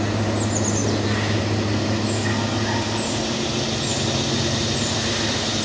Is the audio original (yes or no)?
yes